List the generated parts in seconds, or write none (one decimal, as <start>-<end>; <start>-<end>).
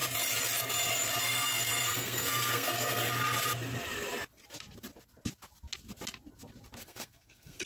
1.2-3.0; 6.8-7.7